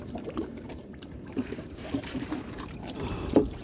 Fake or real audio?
fake